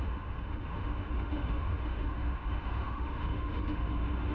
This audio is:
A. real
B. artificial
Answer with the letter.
B